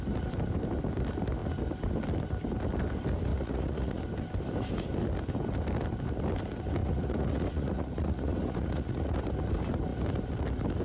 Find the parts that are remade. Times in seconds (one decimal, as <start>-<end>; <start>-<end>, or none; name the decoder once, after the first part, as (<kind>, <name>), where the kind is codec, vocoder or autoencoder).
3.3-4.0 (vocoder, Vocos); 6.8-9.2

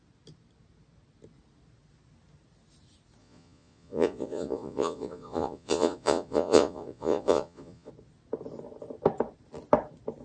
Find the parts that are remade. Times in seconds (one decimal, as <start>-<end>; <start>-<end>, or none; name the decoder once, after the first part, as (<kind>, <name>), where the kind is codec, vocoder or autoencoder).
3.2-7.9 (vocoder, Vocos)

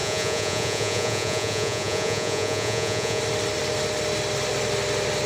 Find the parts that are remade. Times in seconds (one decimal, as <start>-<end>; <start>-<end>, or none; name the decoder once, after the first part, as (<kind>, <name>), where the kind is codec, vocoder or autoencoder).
0.0-3.2 (vocoder, Vocos)